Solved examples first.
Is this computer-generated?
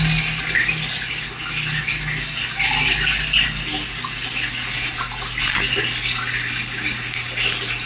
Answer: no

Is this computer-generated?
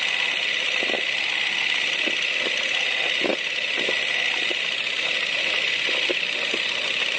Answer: no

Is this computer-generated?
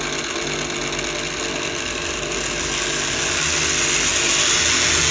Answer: no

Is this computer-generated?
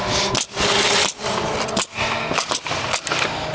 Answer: no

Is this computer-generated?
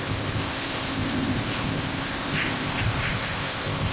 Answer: yes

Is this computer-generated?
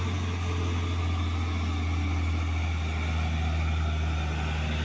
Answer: no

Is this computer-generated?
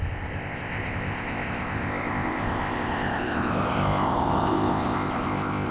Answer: yes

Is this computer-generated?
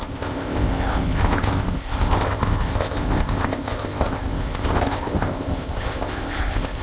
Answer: yes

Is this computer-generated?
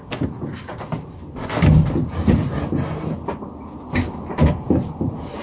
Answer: no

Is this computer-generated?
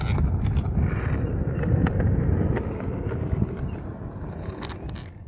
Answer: no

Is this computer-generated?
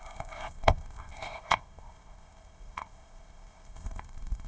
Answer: yes